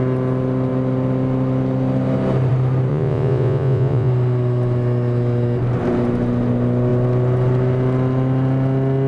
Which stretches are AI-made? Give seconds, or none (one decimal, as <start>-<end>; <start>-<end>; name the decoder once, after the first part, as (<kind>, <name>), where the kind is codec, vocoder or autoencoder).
2.9-4.1 (vocoder, Vocos)